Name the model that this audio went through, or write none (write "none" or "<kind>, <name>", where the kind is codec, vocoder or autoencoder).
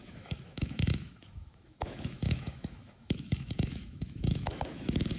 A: autoencoder, DAC-VAE